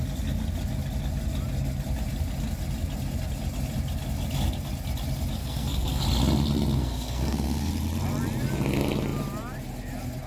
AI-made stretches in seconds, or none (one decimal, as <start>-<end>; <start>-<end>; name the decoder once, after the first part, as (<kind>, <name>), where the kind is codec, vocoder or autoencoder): 5.4-6.0 (codec, SNAC); 6.8-7.7